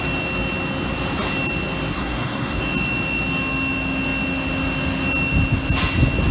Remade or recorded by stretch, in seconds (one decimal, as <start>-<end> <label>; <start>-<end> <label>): 0.0-1.9 recorded; 1.9-2.6 remade; 2.6-6.3 recorded